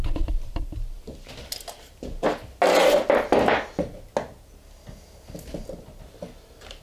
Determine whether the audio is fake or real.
real